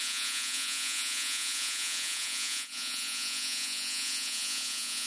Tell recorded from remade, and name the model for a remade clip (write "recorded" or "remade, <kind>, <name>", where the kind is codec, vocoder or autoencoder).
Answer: remade, vocoder, Vocos